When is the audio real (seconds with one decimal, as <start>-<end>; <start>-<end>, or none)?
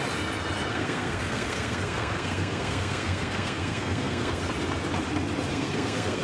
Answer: 0.0-0.7; 4.4-5.5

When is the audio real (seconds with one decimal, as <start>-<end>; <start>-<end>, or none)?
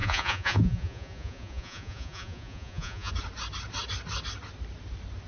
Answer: 3.1-5.3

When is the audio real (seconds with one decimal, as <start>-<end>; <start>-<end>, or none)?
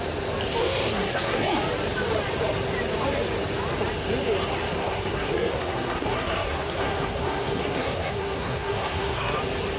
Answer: 0.0-0.6; 1.5-4.8; 9.4-9.8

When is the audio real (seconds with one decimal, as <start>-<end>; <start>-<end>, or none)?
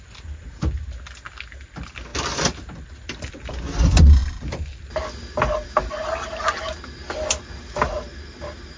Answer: 0.0-8.8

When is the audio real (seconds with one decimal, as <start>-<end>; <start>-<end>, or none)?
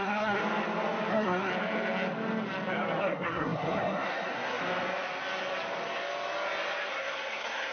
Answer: 0.4-1.1; 1.5-3.0; 4.6-6.9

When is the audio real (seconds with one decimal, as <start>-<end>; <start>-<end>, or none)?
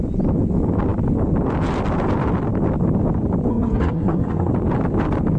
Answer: 0.0-3.5; 4.5-5.4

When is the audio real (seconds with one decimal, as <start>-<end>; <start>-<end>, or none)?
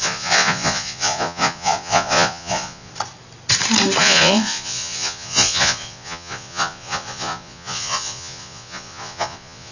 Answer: 2.9-4.0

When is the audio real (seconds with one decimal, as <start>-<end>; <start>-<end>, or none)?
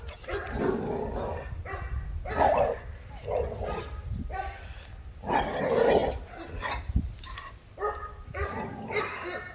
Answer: 0.0-9.5